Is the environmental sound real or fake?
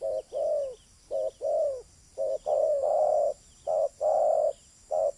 real